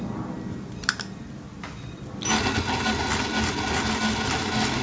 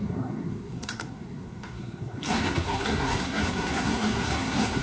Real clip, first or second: first